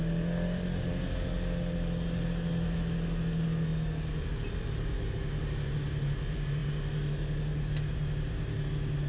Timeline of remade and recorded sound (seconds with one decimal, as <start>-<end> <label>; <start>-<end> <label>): 0.0-9.1 recorded